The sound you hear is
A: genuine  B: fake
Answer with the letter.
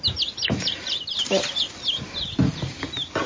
A